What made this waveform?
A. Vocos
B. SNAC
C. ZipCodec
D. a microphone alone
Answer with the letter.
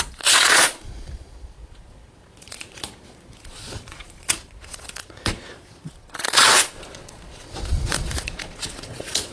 A